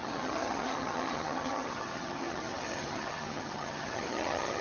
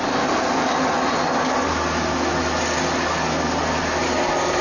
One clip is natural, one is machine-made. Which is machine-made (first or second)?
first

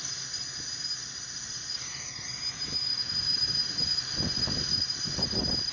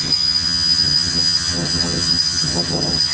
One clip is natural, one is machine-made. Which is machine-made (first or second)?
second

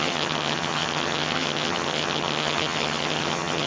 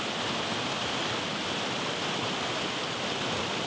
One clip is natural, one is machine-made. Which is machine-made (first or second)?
first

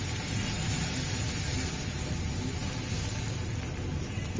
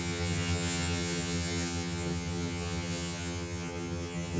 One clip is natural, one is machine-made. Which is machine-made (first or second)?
second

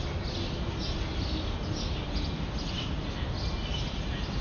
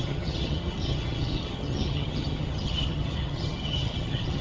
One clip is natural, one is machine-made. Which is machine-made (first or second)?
second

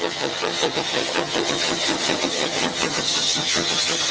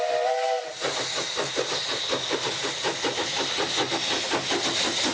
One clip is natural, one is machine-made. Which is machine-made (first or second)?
first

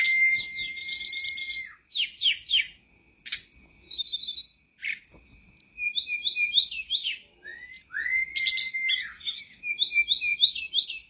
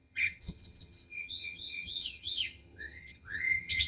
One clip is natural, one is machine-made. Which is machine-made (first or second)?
second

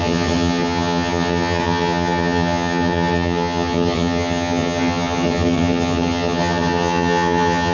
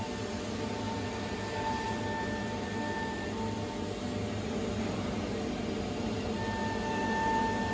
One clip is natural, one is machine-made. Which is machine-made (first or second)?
first